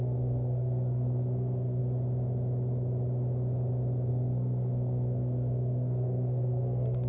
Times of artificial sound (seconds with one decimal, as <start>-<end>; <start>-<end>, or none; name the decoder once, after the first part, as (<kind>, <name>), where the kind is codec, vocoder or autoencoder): 0.0-1.8 (codec, SNAC); 4.1-7.1